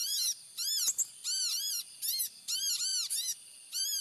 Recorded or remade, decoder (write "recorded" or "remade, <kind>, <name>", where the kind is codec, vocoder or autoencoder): recorded